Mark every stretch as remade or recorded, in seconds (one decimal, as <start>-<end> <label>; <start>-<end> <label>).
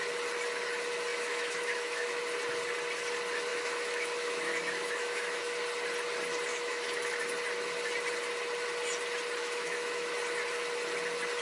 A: 0.0-1.1 recorded; 1.1-2.2 remade; 2.2-3.5 recorded; 3.5-5.4 remade; 5.4-6.5 recorded; 6.5-7.2 remade; 7.2-9.4 recorded; 9.4-10.1 remade; 10.1-11.4 recorded